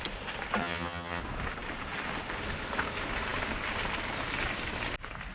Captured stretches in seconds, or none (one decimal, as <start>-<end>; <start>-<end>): 0.0-0.6; 1.2-5.3